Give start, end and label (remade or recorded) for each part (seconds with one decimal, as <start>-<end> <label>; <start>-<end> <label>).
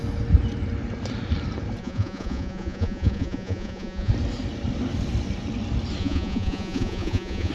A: 0.0-1.8 recorded; 1.8-4.1 remade; 4.1-6.0 recorded; 6.0-7.5 remade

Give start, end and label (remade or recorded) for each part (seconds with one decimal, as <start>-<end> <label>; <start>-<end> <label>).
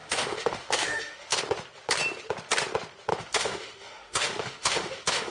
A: 0.0-1.4 remade; 1.4-3.1 recorded; 3.1-5.3 remade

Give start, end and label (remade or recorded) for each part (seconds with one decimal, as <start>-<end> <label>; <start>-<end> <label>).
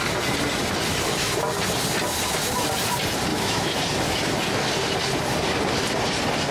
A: 0.0-3.3 recorded; 3.3-3.8 remade; 3.8-6.5 recorded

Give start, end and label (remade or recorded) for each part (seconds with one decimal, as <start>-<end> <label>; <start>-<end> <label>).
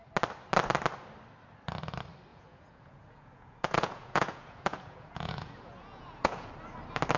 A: 0.0-2.3 recorded; 2.3-6.5 remade; 6.5-7.2 recorded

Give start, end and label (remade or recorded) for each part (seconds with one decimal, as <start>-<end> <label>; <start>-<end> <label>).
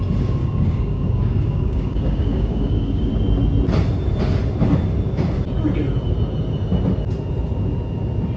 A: 0.0-0.4 recorded; 0.4-3.1 remade; 3.1-8.4 recorded